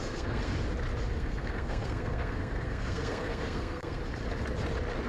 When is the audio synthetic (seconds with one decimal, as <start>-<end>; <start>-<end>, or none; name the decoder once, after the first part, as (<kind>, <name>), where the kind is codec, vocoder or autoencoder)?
0.0-0.5 (codec, SNAC); 1.1-4.0